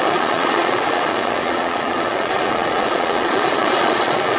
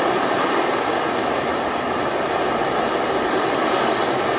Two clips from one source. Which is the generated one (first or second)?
first